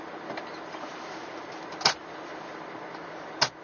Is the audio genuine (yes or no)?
yes